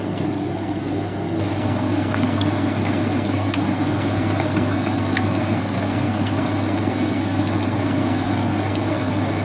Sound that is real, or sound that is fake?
fake